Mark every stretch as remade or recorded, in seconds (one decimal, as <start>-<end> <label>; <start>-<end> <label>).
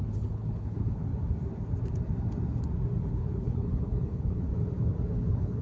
0.0-1.1 remade; 1.1-3.1 recorded; 3.1-4.5 remade; 4.5-5.1 recorded; 5.1-5.6 remade